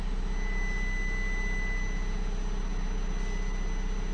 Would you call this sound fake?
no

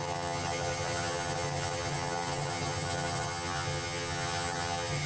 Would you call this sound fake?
yes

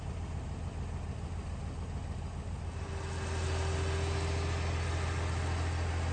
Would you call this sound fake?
no